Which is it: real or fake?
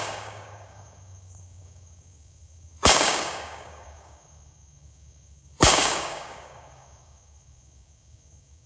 fake